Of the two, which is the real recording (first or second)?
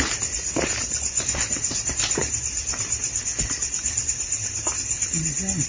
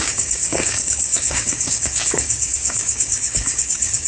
first